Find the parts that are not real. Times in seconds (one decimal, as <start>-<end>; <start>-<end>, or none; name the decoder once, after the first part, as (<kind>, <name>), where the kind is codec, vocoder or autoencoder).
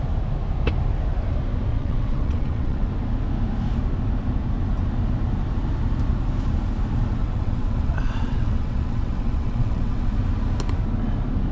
1.7-2.9 (vocoder, WaveNeXt); 7.2-10.1